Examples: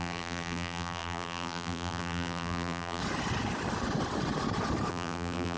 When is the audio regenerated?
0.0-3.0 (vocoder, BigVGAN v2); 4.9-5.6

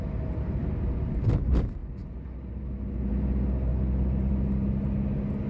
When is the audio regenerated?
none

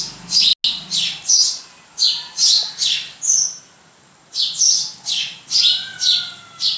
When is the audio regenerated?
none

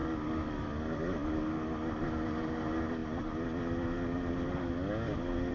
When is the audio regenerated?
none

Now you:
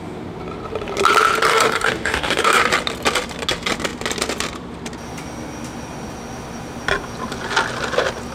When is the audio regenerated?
1.5-2.6 (codec, DAC)

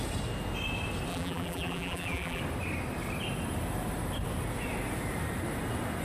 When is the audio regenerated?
1.1-2.4 (vocoder, BigVGAN v2)